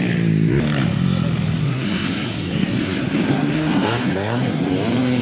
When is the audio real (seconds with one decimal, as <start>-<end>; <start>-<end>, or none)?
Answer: 0.0-1.6; 4.7-5.2